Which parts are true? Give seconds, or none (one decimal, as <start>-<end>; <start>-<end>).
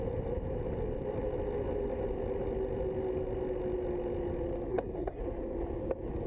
0.0-4.7; 5.2-6.3